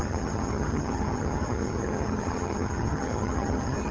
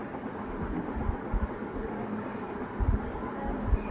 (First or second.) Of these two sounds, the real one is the second